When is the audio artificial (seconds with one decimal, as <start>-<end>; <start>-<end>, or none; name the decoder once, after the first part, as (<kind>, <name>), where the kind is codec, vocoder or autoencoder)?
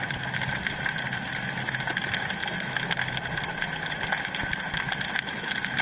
none